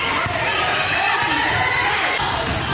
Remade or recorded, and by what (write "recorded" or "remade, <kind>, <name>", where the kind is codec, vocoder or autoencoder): remade, vocoder, BigVGAN v2